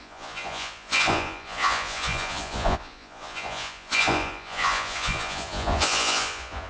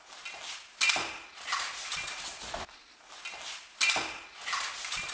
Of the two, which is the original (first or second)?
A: second